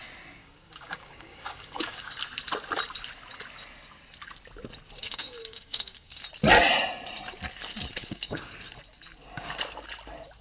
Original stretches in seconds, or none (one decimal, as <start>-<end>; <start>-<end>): 0.0-0.4; 2.1-5.0; 6.2-8.0; 8.5-10.4